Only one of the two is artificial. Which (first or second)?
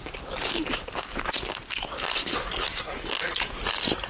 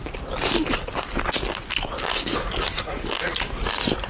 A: first